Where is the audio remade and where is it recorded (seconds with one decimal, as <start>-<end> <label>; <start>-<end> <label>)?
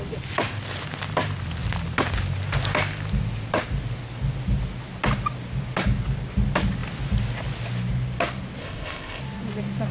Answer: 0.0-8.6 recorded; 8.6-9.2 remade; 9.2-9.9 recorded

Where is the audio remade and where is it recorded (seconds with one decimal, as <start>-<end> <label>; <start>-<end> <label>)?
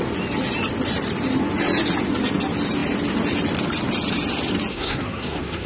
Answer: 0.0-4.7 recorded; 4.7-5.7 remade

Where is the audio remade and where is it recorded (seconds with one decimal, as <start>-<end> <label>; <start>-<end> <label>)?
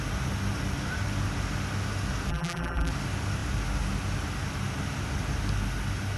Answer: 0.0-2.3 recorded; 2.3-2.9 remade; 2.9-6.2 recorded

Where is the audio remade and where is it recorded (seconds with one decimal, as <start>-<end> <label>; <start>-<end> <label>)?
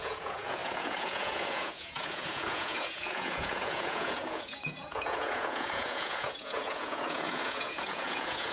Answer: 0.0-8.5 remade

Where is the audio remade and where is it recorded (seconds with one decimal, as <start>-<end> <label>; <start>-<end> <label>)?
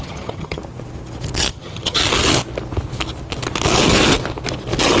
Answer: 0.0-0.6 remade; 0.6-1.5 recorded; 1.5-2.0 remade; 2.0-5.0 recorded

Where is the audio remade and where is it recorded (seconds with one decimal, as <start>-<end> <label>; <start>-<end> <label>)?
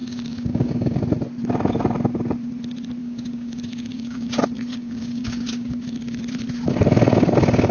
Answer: 0.0-1.0 remade; 1.0-3.0 recorded; 3.0-4.3 remade; 4.3-4.7 recorded; 4.7-6.2 remade; 6.2-7.7 recorded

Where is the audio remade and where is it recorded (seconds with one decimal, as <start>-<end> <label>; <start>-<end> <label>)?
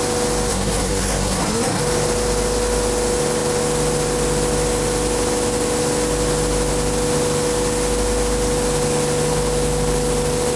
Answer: 0.0-0.5 recorded; 0.5-1.8 remade; 1.8-10.6 recorded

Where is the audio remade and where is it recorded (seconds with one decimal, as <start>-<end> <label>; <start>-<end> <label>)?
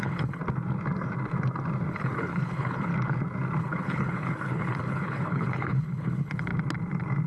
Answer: 0.0-0.4 remade; 0.4-1.9 recorded; 1.9-2.9 remade; 2.9-3.6 recorded; 3.6-6.5 remade; 6.5-7.3 recorded